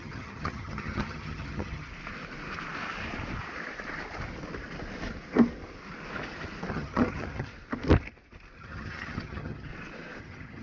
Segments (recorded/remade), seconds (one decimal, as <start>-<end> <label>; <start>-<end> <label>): 0.0-1.9 remade; 1.9-6.7 recorded; 6.7-7.5 remade; 7.5-8.6 recorded; 8.6-9.7 remade; 9.7-10.2 recorded; 10.2-10.6 remade